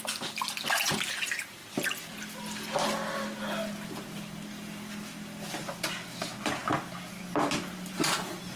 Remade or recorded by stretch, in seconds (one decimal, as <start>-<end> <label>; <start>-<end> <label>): 0.0-8.6 recorded